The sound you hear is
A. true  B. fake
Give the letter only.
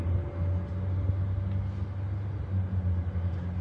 A